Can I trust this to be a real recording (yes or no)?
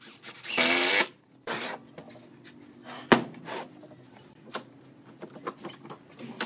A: yes